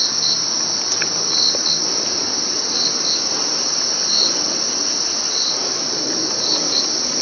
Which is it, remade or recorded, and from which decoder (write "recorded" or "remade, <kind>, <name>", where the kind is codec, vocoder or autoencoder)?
recorded